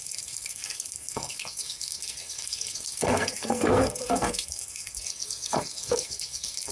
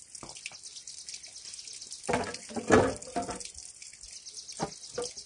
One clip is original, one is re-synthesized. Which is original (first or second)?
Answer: second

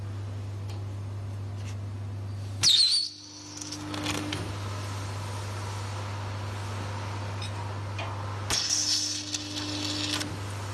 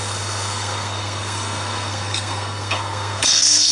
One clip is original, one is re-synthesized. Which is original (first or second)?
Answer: first